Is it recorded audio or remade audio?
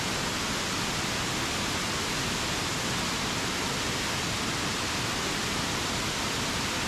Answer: recorded